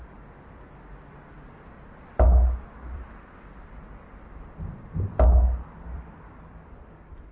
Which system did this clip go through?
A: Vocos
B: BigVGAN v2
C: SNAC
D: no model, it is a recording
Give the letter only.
D